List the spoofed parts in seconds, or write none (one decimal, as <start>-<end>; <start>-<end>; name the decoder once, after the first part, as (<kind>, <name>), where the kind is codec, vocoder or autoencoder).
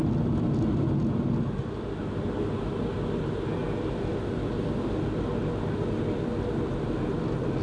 none